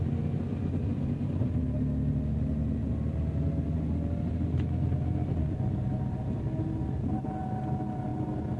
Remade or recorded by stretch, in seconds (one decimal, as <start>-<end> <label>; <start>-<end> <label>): 0.0-8.6 recorded